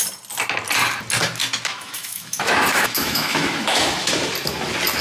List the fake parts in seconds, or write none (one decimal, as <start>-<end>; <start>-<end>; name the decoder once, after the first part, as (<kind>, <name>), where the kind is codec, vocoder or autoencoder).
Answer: 1.7-4.1 (autoencoder, DAC-VAE)